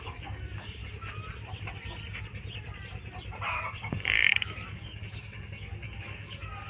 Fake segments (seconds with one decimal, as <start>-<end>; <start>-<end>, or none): 0.0-0.8; 3.5-6.7